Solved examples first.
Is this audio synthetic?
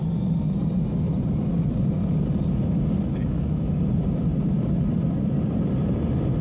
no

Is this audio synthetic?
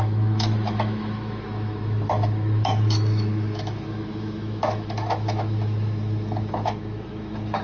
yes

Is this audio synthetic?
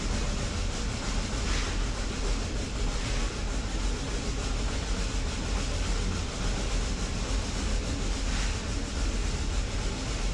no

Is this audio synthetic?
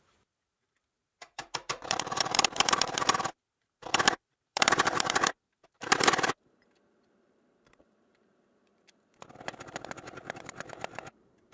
yes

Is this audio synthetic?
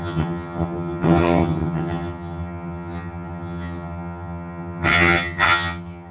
yes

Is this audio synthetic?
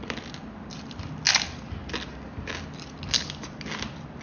no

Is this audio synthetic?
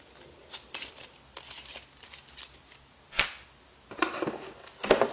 no